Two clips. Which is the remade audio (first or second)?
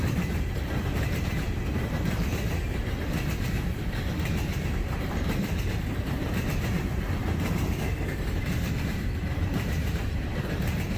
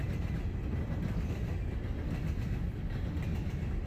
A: first